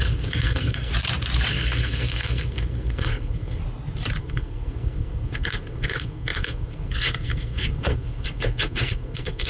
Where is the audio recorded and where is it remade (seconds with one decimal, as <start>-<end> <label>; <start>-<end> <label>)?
0.0-0.9 remade; 0.9-1.5 recorded; 1.5-3.6 remade; 3.6-4.2 recorded; 4.2-9.5 remade